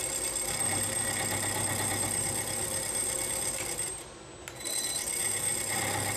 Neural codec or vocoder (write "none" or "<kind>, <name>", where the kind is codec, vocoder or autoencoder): none